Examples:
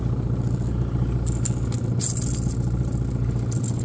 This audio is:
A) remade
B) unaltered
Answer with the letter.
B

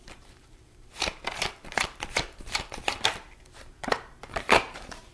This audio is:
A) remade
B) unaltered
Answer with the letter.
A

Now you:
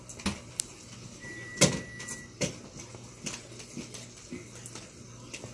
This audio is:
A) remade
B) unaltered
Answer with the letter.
B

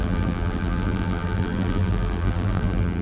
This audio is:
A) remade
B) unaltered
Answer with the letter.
A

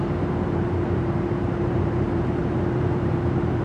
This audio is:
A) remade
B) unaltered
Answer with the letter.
A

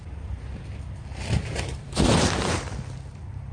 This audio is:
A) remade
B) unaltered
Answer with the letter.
A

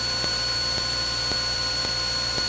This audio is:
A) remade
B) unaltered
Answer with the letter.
A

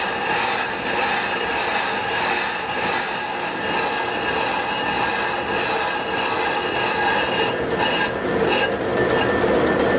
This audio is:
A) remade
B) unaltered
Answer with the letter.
B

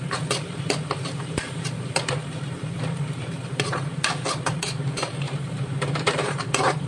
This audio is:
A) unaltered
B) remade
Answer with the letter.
B